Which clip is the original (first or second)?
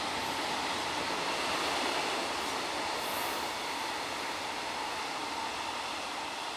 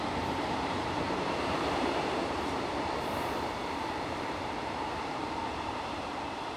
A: first